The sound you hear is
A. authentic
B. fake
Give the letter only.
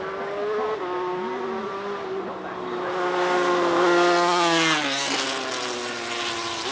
A